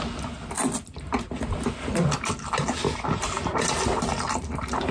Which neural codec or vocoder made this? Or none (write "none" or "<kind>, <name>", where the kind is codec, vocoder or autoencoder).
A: none